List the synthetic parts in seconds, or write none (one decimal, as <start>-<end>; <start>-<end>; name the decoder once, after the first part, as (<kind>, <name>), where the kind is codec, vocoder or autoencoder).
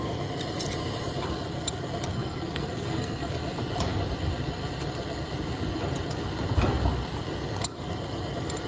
2.1-3.3 (codec, SNAC)